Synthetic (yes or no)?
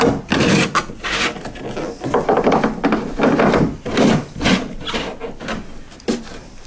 no